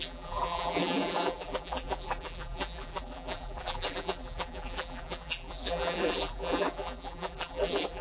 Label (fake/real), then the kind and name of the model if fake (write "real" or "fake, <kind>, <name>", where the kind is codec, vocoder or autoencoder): fake, vocoder, BigVGAN v2